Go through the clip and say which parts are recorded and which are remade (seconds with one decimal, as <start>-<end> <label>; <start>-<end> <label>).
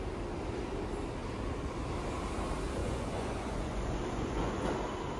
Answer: 0.0-2.8 recorded; 2.8-4.7 remade; 4.7-5.2 recorded